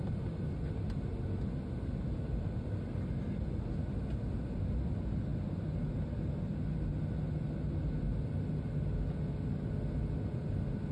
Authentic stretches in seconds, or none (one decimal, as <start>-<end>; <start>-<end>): 0.0-10.9